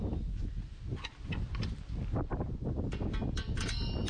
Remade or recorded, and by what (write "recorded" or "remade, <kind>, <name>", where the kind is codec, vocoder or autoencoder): recorded